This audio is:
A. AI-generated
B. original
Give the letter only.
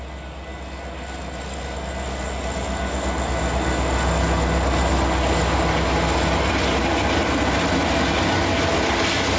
B